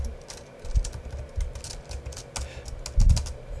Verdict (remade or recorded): recorded